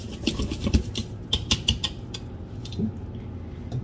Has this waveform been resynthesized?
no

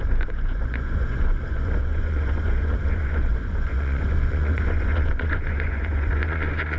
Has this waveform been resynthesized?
yes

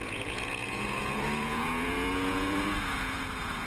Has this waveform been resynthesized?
yes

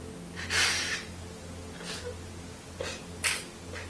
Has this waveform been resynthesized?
no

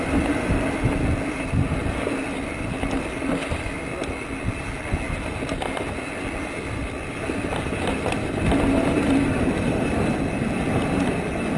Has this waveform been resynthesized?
no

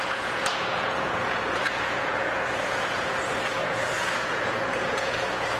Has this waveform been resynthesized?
yes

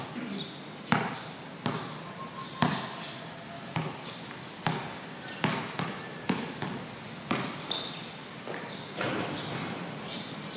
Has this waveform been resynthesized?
no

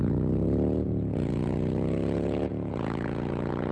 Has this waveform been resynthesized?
yes